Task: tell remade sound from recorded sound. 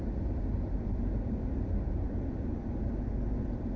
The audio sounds recorded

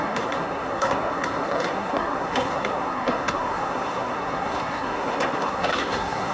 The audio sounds remade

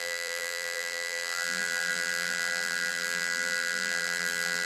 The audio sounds remade